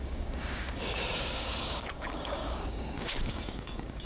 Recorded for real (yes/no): no